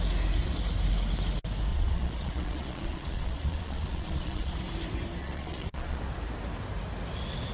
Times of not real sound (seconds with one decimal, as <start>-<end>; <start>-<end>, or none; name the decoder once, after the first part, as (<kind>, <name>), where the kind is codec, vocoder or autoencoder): 1.7-4.5 (vocoder, Vocos); 5.2-6.0